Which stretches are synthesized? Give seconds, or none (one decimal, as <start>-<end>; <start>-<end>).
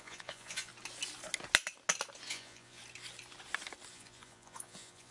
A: 0.0-0.7; 2.3-2.8; 3.9-5.1